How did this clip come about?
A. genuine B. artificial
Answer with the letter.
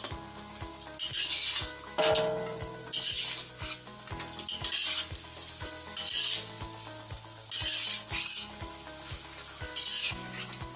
A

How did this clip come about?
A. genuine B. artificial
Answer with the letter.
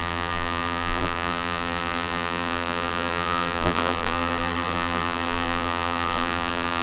B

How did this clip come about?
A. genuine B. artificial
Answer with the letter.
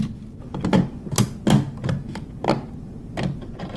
A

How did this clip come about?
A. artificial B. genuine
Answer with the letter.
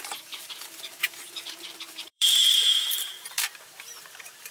A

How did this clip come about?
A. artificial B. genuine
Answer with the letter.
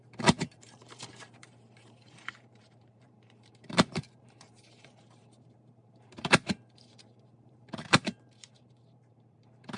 A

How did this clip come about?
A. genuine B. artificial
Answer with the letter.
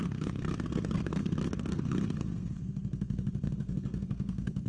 B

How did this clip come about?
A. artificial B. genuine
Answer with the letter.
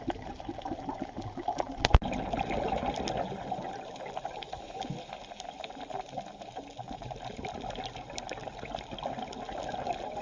B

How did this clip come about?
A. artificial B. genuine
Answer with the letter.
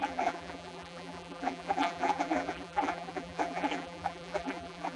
A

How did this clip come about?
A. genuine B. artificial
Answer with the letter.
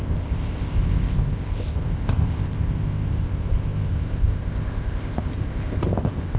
B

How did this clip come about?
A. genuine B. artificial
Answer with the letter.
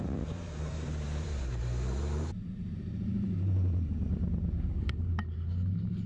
B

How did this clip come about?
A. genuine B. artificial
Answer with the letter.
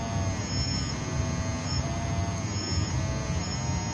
A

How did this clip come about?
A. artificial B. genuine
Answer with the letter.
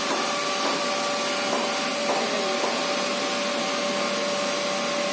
B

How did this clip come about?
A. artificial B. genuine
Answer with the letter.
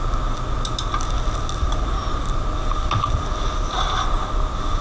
B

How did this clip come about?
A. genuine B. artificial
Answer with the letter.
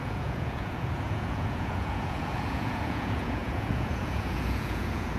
B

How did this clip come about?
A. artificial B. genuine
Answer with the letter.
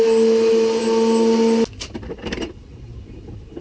B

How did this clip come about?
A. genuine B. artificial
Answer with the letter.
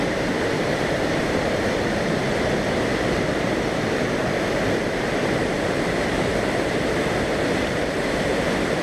B